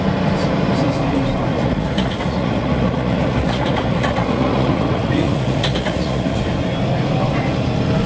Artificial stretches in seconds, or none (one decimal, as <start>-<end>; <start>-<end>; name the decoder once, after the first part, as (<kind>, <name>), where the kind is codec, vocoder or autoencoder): 1.5-6.4 (vocoder, Vocos)